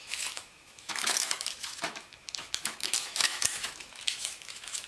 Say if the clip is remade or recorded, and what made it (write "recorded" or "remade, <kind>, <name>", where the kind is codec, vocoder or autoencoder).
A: remade, autoencoder, DAC-VAE